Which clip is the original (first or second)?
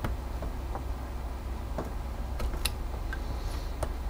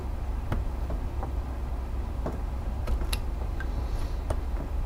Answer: first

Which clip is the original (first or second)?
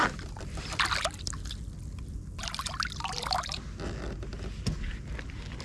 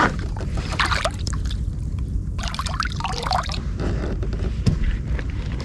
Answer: first